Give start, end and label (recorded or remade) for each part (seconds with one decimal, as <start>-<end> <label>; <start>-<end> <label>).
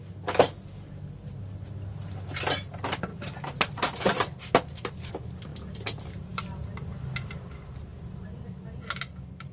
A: 0.0-3.1 recorded; 3.1-5.1 remade; 5.1-9.5 recorded